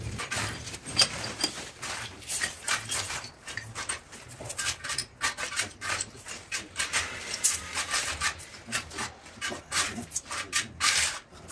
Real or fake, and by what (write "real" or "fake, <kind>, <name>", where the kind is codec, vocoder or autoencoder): fake, vocoder, BigVGAN v2